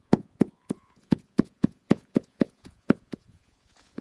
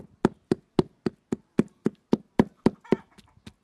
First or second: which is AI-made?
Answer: first